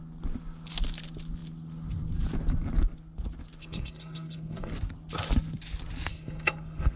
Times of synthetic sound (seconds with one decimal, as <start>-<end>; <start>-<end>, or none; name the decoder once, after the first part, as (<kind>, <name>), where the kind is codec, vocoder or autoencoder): 3.6-4.7 (codec, SNAC); 6.1-7.0